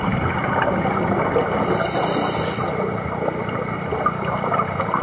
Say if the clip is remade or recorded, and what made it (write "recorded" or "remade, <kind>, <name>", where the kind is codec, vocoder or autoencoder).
recorded